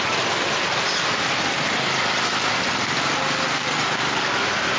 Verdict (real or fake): real